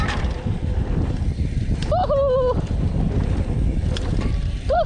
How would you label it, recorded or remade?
recorded